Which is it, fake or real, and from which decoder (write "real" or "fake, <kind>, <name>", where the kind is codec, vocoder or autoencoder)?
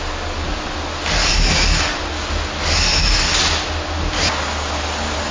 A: real